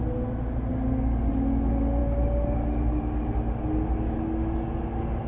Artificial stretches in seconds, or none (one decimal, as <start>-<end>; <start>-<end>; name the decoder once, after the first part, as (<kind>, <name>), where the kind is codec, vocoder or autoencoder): none